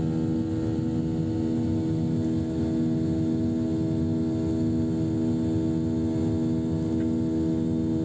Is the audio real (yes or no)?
yes